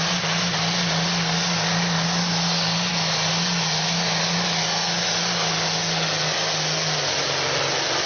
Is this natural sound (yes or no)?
yes